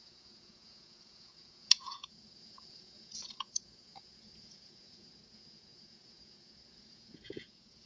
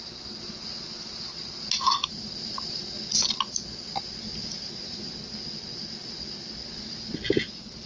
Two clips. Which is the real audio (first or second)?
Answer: second